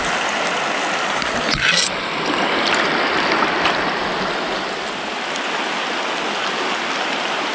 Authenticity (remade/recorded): recorded